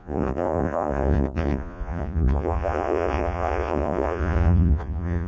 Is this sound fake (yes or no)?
yes